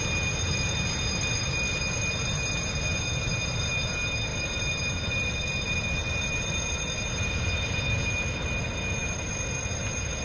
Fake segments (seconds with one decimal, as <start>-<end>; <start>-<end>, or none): none